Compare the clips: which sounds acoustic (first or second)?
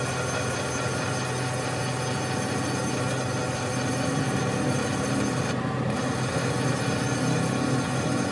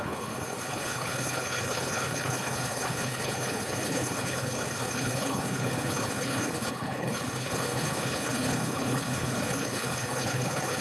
first